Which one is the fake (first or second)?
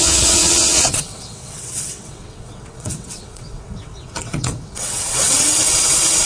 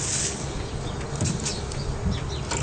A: first